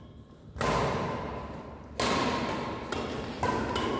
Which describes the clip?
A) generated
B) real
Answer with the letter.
B